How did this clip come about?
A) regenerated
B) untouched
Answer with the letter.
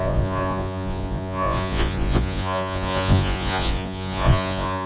A